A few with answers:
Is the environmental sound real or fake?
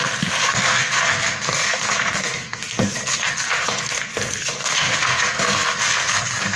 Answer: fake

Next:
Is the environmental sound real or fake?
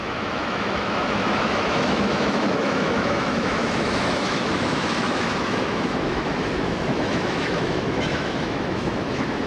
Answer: fake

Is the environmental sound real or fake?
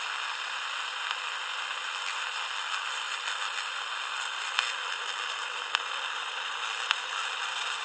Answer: real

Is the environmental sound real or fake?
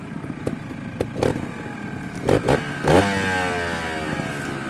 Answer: real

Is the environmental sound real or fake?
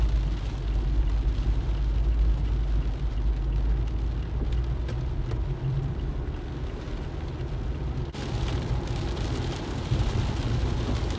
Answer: real